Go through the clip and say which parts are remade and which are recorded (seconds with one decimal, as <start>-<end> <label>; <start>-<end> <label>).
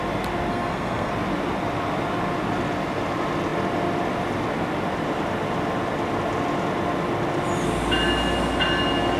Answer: 0.0-0.5 recorded; 0.5-1.1 remade; 1.1-9.2 recorded